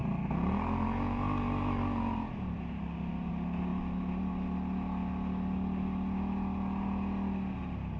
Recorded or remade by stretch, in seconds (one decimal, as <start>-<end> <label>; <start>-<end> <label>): 0.0-8.0 recorded